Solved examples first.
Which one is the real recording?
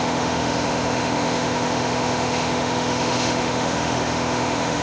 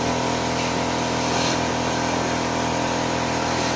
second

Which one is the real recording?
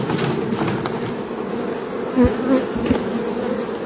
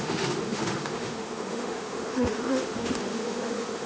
first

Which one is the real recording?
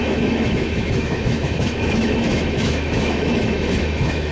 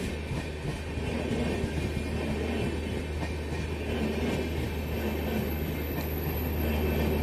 second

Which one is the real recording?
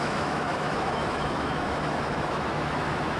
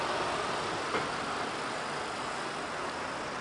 second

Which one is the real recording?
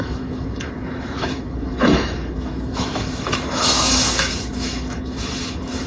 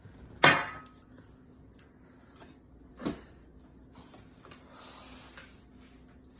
second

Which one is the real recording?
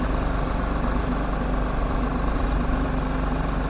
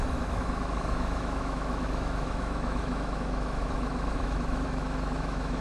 first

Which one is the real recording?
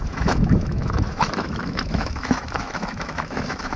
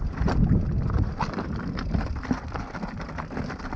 second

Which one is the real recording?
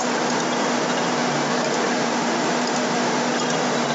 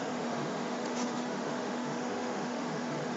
first